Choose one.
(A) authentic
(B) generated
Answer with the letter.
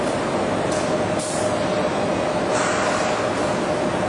A